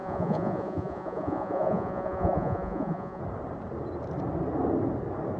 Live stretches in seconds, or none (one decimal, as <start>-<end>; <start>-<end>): 3.2-5.4